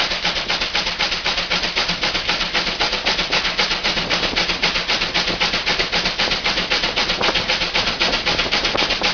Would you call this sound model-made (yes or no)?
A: no